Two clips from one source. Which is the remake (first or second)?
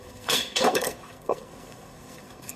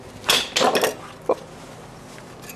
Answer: first